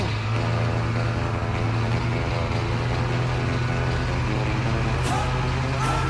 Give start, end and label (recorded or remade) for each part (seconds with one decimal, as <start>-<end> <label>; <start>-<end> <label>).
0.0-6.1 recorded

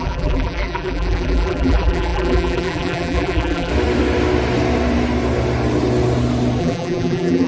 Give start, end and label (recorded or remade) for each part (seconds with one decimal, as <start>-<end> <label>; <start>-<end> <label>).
0.0-3.7 remade; 3.7-6.6 recorded; 6.6-7.5 remade

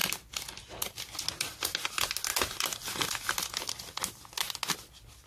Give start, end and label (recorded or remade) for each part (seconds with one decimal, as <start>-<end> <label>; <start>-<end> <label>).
0.0-1.0 remade; 1.0-2.3 recorded; 2.3-4.5 remade; 4.5-5.3 recorded

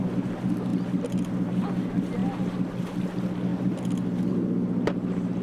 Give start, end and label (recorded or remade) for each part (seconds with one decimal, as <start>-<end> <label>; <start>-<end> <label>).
0.0-5.4 recorded

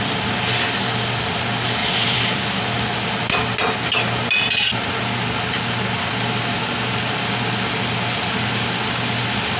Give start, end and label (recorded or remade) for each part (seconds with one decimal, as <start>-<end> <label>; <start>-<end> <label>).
0.0-1.8 recorded; 1.8-2.6 remade; 2.6-9.6 recorded

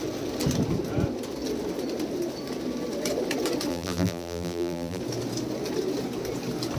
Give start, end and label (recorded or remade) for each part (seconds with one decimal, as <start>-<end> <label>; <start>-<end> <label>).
0.0-3.7 recorded; 3.7-5.0 remade; 5.0-6.8 recorded